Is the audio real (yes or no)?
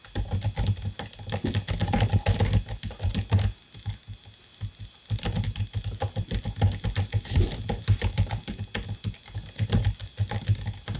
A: yes